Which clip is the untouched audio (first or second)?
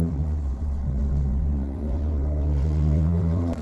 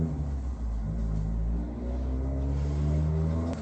second